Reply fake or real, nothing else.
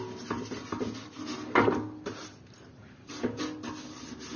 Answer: real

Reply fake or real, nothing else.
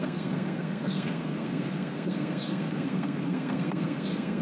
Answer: fake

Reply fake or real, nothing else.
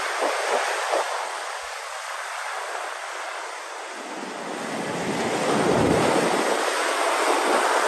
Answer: real